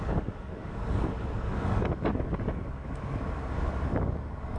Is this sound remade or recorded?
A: remade